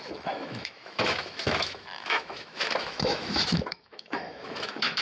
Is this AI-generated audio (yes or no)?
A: yes